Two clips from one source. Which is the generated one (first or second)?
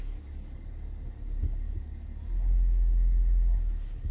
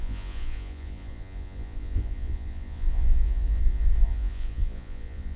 second